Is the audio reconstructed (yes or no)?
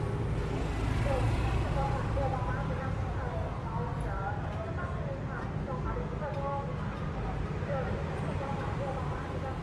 no